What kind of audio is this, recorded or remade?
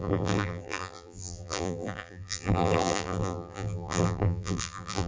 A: remade